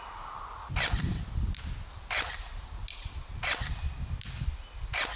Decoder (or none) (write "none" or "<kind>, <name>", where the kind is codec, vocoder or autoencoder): none